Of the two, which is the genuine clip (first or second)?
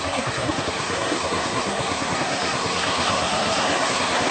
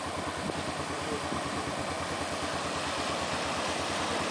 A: second